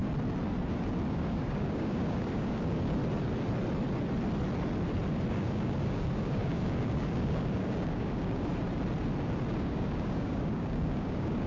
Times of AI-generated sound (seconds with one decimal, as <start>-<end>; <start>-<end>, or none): 1.1-3.0; 5.3-8.5; 9.5-11.5